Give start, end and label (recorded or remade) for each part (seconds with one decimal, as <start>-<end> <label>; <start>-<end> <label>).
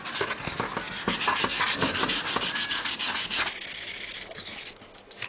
0.0-5.3 recorded